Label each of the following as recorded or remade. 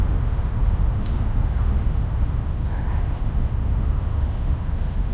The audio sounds remade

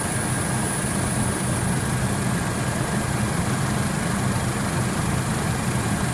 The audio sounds recorded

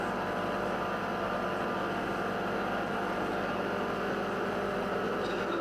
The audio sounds recorded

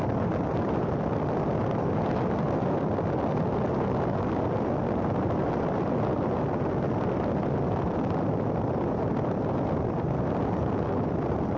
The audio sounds recorded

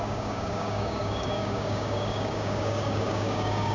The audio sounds remade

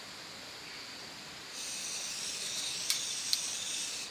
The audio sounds recorded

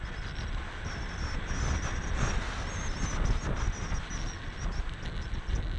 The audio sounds recorded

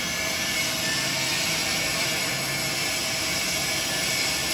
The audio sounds recorded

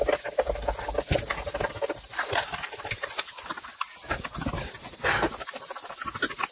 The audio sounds recorded